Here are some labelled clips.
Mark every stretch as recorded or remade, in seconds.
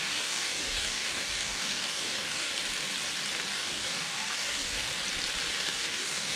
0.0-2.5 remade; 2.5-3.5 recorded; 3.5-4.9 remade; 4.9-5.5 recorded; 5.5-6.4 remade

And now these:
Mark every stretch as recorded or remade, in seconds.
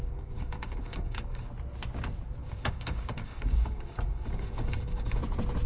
0.0-1.5 remade; 1.5-2.4 recorded; 2.4-5.2 remade; 5.2-5.7 recorded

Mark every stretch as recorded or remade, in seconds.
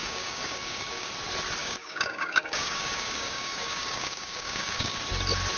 0.0-1.1 remade; 1.1-1.6 recorded; 1.6-5.0 remade; 5.0-5.6 recorded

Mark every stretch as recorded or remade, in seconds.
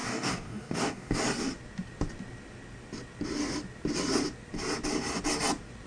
0.0-1.2 remade; 1.2-5.9 recorded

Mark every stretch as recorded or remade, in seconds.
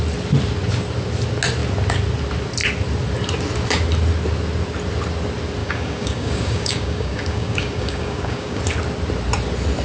0.0-5.6 recorded; 5.6-8.6 remade; 8.6-9.8 recorded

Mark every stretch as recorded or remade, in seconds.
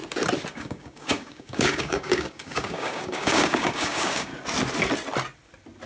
0.0-0.5 recorded; 0.5-4.3 remade; 4.3-5.9 recorded